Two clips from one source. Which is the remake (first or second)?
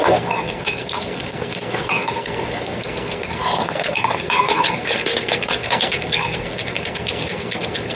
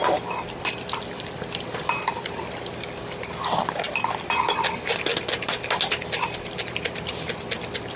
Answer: first